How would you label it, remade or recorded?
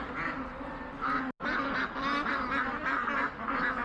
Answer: recorded